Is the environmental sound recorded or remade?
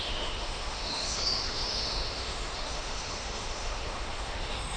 remade